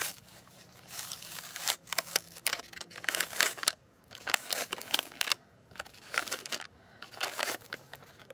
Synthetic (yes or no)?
yes